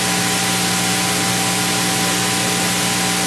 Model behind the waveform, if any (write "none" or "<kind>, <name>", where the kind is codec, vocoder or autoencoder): none